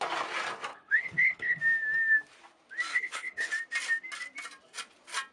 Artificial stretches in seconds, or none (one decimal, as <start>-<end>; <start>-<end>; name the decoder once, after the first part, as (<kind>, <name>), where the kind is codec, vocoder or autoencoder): 0.7-1.6 (codec, HILCodec); 2.9-3.5